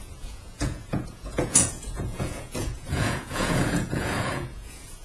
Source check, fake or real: fake